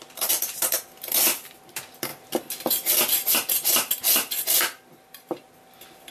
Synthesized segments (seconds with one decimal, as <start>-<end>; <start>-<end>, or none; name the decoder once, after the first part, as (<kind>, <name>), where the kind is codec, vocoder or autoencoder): none